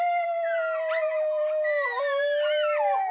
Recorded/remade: recorded